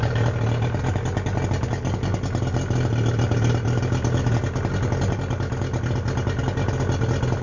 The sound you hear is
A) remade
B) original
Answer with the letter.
B